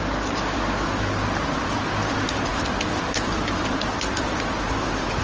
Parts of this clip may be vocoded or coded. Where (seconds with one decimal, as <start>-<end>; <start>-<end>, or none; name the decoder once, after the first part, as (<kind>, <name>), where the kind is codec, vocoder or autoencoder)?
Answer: 2.5-4.5 (vocoder, BigVGAN v2)